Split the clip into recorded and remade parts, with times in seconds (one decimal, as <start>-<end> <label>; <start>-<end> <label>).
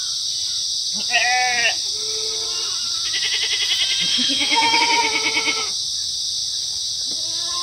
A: 0.0-4.1 recorded; 4.1-4.8 remade; 4.8-7.6 recorded